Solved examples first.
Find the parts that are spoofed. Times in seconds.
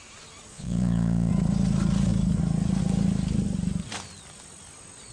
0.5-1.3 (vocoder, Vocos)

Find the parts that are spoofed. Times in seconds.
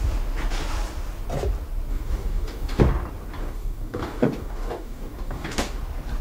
1.9-2.8 (codec, DAC); 3.4-5.8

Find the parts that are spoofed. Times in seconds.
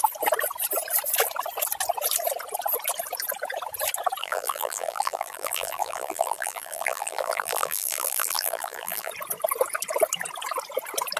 4.2-9.1 (vocoder, BigVGAN v2)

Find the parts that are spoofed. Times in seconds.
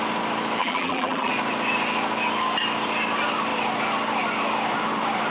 0.6-1.3 (vocoder, BigVGAN v2)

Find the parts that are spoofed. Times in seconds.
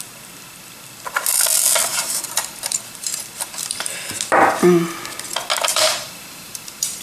1.9-4.1 (vocoder, BigVGAN v2); 5.7-7.0